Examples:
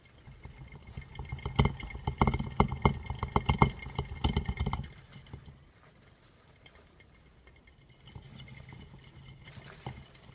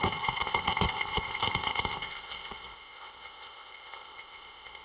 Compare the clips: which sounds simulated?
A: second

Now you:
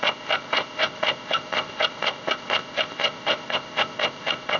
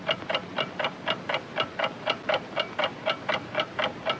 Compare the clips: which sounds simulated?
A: first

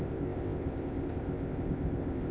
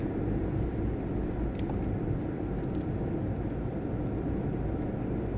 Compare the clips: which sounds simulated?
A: first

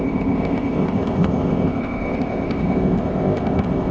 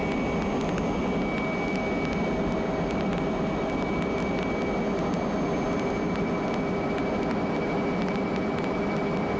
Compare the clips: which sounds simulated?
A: first